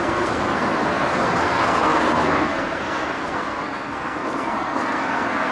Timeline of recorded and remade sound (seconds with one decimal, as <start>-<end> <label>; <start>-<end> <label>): 0.0-5.5 remade